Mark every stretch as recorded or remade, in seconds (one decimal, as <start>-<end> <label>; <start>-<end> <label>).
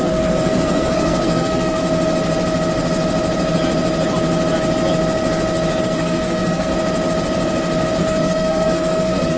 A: 0.0-1.8 remade; 1.8-5.8 recorded; 5.8-6.7 remade; 6.7-8.0 recorded; 8.0-9.4 remade